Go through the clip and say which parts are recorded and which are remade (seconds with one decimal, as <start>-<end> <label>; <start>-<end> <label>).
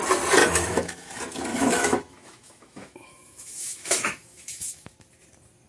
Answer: 0.0-0.4 recorded; 0.4-1.1 remade; 1.1-1.5 recorded; 1.5-4.9 remade; 4.9-5.7 recorded